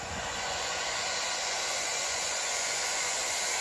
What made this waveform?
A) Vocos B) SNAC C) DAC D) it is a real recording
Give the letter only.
A